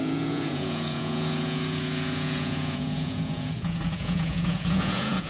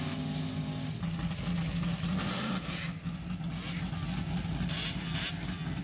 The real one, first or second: second